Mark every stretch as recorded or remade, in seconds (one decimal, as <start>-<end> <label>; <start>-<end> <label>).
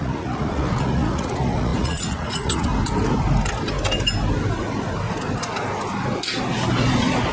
0.0-2.7 remade; 2.7-7.3 recorded